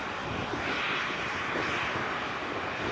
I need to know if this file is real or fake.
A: real